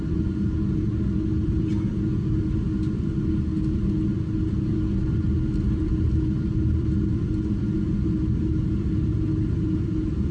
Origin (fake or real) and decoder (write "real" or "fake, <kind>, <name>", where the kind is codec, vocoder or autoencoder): real